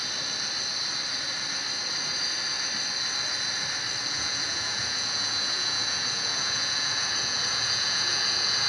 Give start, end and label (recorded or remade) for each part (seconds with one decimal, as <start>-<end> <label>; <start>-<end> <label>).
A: 0.0-4.1 recorded; 4.1-8.7 remade